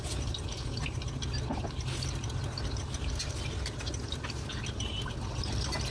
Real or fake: real